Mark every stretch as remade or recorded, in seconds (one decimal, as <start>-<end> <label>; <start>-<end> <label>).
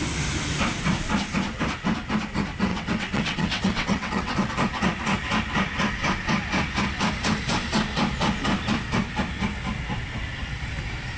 0.0-2.7 recorded; 2.7-4.5 remade; 4.5-11.2 recorded